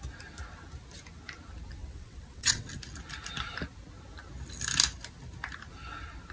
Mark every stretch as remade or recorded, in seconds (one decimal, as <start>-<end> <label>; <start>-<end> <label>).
0.0-1.8 recorded; 1.8-2.7 remade; 2.7-6.3 recorded